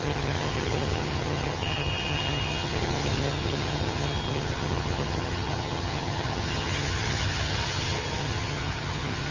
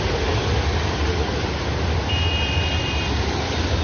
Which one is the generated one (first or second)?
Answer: first